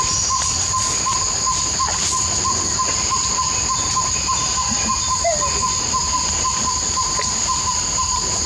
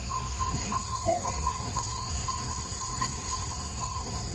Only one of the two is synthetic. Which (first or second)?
second